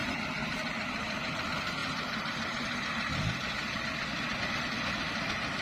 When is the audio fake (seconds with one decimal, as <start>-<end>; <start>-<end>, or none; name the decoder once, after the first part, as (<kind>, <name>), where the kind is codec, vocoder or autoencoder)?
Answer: 1.4-1.8 (vocoder, BigVGAN v2); 4.4-5.6